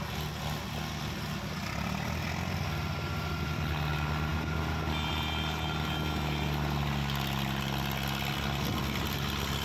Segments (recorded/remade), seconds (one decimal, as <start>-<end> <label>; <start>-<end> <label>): 0.0-9.6 recorded